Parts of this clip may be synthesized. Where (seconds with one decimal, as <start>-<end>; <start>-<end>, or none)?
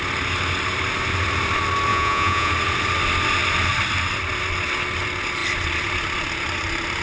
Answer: 1.9-2.5